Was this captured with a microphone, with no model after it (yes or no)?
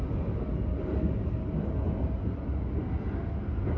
yes